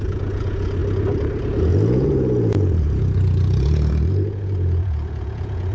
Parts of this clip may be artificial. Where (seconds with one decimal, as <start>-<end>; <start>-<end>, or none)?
0.0-0.8; 1.6-5.7